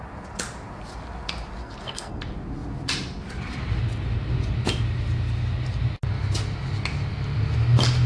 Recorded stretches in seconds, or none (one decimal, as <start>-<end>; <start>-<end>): 0.0-1.6; 2.2-8.1